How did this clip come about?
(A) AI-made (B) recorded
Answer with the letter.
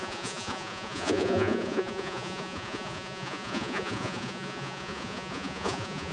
A